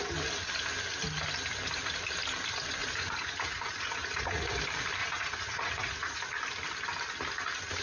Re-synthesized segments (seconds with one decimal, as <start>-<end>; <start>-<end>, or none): 2.8-4.4; 5.0-6.2